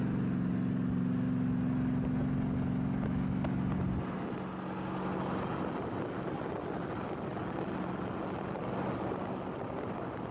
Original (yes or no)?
yes